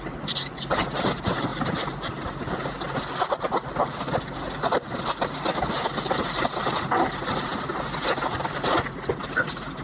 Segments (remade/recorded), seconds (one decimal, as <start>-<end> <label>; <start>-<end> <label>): 0.0-9.8 recorded